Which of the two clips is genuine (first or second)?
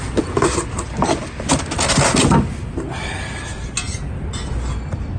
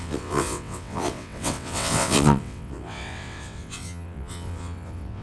first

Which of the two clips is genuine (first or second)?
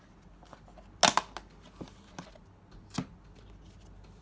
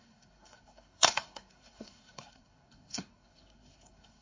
first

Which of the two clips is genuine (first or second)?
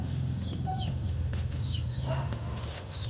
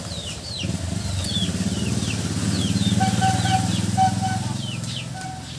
second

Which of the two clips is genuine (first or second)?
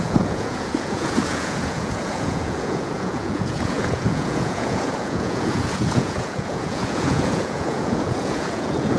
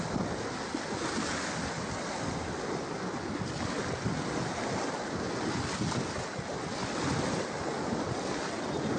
second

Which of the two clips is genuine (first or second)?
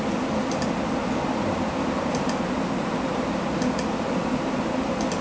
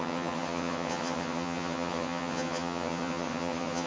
first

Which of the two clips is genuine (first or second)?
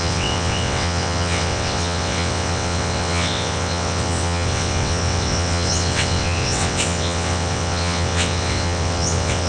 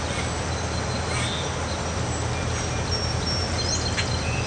second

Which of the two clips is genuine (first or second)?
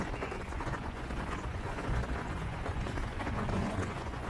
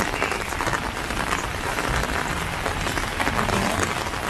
second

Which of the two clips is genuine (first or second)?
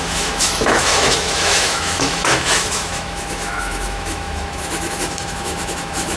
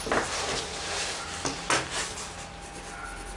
second